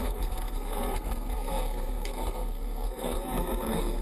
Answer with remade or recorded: remade